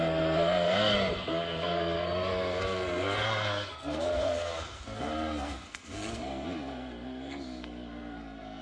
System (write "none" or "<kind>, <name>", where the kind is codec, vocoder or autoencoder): codec, SNAC